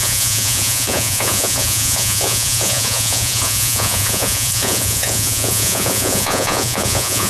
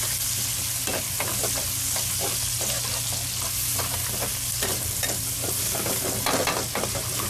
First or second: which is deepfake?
first